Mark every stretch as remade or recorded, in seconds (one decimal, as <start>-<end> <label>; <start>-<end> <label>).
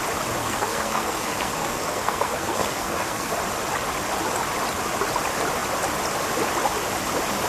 0.0-0.4 recorded; 0.4-3.3 remade; 3.3-7.5 recorded